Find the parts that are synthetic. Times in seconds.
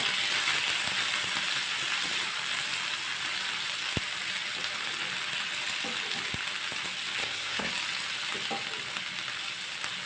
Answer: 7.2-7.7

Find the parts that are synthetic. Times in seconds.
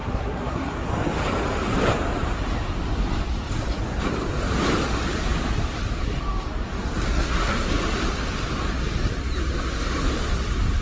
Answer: 0.0-0.9; 7.1-7.7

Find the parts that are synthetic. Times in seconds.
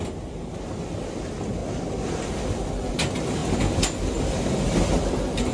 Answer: none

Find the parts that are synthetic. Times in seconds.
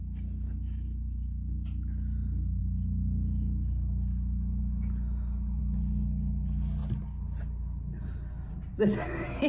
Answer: none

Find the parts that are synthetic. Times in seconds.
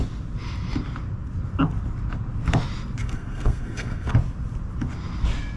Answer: 3.0-4.1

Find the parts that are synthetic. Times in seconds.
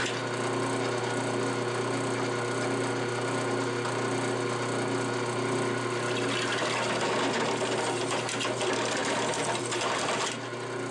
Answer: none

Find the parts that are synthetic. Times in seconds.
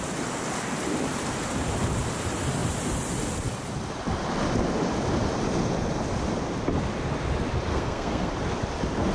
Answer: 7.7-8.3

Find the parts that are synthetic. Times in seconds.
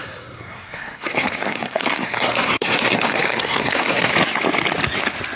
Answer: 0.0-4.1